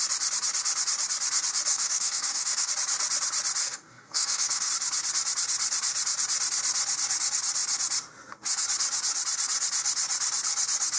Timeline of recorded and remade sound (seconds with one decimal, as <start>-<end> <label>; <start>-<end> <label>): 0.0-1.7 recorded; 1.7-2.7 remade; 2.7-3.6 recorded; 3.6-4.7 remade; 4.7-11.0 recorded